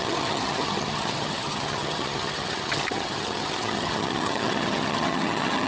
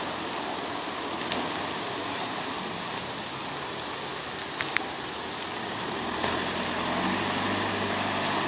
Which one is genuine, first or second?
second